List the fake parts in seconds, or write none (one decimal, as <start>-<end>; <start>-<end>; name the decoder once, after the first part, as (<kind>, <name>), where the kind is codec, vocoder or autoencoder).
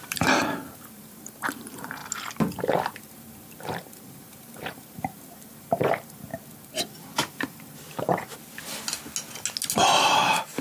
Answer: 0.0-2.0 (vocoder, BigVGAN v2); 2.5-6.3; 7.3-8.1; 9.8-10.6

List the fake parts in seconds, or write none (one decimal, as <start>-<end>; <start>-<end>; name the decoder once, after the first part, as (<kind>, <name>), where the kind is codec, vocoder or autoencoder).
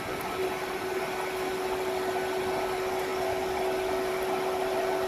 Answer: none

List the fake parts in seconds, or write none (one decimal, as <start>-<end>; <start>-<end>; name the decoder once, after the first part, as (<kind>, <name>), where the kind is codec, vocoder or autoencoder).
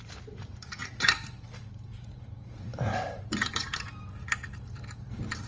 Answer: 0.0-5.5 (vocoder, BigVGAN v2)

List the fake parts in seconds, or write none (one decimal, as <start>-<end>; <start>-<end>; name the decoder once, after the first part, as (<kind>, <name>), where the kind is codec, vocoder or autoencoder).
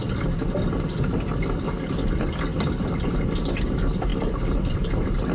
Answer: none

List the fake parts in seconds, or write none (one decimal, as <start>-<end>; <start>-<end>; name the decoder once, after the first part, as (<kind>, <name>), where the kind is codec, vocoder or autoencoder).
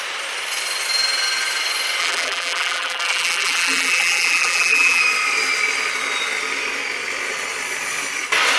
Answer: 2.0-5.0 (vocoder, BigVGAN v2)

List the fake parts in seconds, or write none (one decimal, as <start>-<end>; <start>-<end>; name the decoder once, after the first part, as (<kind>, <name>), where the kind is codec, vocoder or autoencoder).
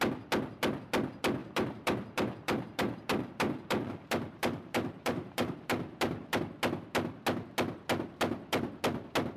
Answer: 1.4-6.4 (vocoder, BigVGAN v2)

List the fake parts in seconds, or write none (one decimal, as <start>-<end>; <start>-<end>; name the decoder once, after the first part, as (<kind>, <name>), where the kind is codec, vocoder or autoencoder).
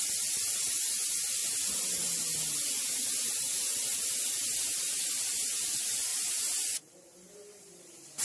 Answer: 6.1-8.2 (vocoder, BigVGAN v2)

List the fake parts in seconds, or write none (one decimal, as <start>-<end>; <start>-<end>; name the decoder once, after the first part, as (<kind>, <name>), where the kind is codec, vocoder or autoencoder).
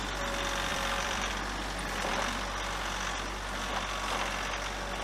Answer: 0.7-1.3 (vocoder, BigVGAN v2)